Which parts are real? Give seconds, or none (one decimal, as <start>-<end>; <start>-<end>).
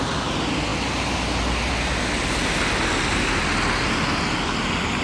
0.0-5.0